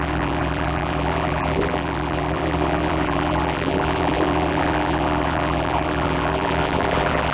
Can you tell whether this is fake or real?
fake